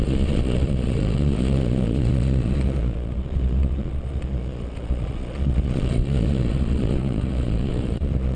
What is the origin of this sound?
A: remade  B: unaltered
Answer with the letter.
A